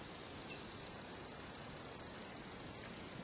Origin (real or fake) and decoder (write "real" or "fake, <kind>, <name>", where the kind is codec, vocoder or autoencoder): real